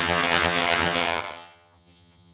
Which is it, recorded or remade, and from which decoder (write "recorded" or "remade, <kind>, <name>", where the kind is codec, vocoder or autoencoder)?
remade, vocoder, HiFi-GAN